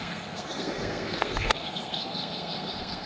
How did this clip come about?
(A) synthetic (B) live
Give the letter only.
A